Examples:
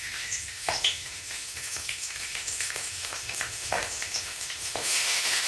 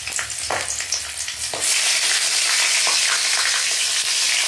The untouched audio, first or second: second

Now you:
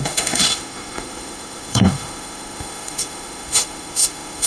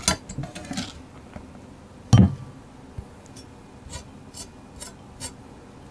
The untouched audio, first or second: second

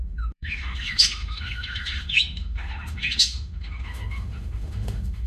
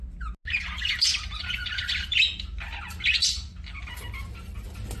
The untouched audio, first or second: second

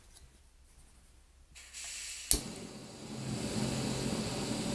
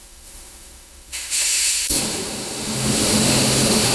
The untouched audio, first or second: first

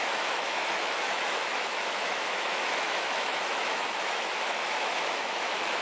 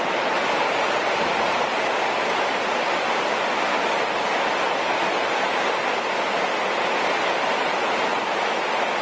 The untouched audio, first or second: second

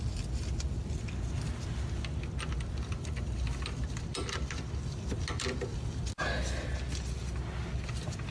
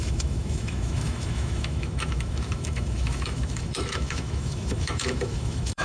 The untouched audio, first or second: first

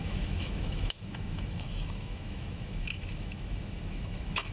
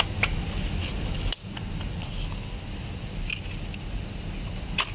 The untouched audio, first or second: second